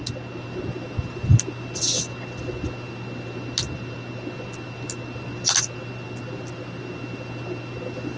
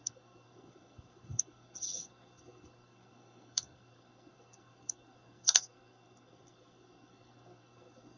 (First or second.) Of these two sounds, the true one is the first